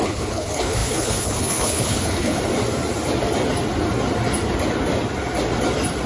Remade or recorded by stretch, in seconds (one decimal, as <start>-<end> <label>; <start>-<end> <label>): 0.0-2.4 remade; 2.4-6.1 recorded